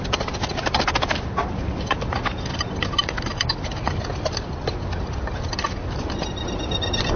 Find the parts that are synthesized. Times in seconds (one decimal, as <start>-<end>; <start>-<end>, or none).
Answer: none